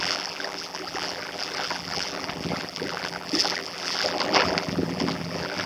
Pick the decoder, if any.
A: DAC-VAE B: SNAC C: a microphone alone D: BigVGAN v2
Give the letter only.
D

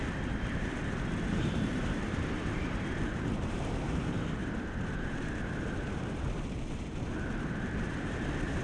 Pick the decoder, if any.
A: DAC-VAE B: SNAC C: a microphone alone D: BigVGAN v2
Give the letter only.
D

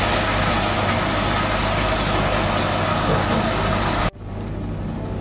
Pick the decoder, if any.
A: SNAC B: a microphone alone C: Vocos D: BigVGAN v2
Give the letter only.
B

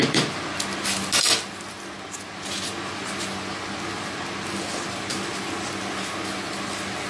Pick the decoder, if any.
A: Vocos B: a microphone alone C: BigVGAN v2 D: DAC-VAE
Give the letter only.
B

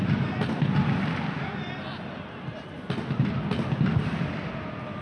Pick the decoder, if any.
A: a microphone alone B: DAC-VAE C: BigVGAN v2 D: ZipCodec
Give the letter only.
A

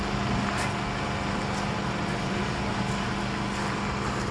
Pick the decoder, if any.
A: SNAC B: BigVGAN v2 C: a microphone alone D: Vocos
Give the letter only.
C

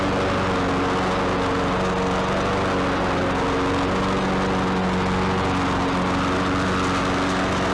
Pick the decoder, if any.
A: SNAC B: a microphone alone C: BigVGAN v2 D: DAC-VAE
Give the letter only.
B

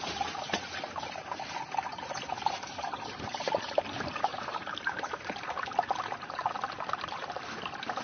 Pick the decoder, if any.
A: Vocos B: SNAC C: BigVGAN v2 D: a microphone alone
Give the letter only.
C